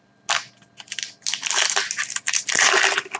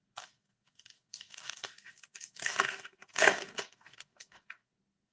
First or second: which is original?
first